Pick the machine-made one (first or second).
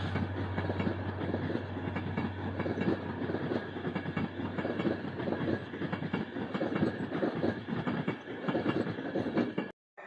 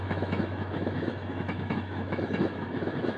second